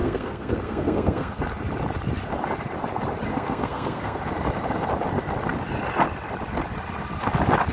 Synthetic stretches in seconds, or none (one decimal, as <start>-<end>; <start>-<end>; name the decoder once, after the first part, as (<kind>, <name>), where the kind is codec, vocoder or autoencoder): 0.0-1.4 (codec, SNAC); 3.3-4.2